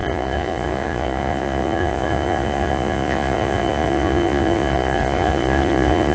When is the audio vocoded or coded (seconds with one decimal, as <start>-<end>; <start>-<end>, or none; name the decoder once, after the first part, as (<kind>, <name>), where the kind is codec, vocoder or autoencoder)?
0.0-6.1 (vocoder, Vocos)